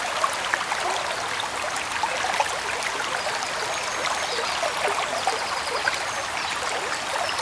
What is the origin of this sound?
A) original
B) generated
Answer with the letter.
A